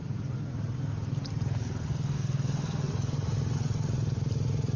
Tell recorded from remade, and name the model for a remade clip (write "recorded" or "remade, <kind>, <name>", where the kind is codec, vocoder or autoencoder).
recorded